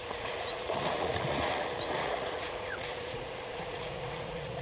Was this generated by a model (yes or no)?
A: yes